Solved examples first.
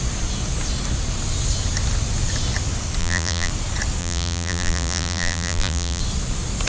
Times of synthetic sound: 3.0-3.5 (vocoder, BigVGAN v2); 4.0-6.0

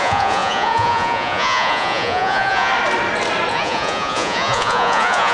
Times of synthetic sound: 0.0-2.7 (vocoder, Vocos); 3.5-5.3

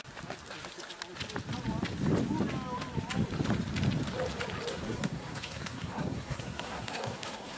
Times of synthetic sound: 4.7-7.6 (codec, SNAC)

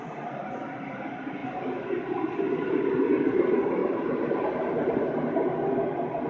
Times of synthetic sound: none

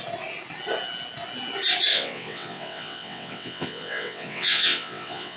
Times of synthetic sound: 1.9-5.4 (vocoder, WaveNeXt)

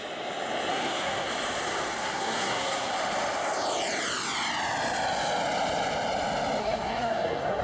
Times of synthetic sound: 0.7-1.3 (codec, SNAC); 2.0-2.9; 6.6-7.6

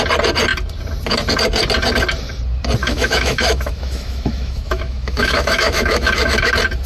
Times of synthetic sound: 2.8-6.5 (autoencoder, DAC-VAE)